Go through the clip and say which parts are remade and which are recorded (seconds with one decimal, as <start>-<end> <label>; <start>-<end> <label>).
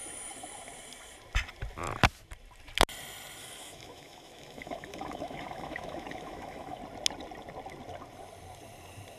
0.0-3.4 recorded; 3.4-6.8 remade; 6.8-9.2 recorded